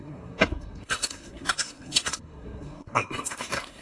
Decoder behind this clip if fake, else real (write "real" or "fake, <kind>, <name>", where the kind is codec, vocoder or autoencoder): fake, codec, SNAC